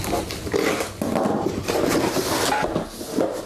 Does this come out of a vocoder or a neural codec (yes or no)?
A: no